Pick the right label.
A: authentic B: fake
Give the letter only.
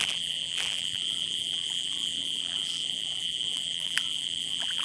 B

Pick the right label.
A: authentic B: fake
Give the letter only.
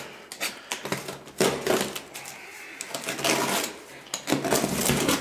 A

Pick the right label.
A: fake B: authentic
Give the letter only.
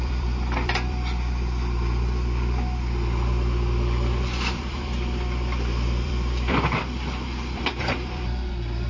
A